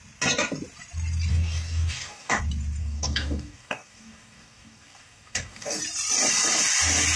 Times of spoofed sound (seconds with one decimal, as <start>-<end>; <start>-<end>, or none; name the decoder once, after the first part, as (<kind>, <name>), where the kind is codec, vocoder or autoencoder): 1.3-2.4 (codec, DAC); 2.8-5.8